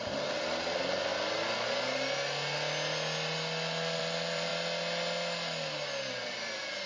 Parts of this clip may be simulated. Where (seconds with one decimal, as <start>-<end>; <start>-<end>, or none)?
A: 0.0-1.1; 4.0-4.5; 6.1-6.9